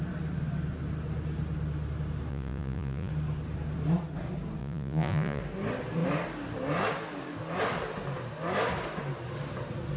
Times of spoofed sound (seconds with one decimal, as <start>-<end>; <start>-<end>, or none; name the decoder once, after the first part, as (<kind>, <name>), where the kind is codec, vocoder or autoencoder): 2.3-3.1 (vocoder, Vocos); 4.6-5.4